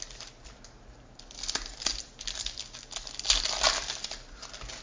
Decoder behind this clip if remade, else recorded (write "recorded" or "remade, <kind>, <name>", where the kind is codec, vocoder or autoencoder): recorded